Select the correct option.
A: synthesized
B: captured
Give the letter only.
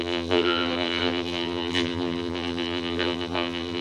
A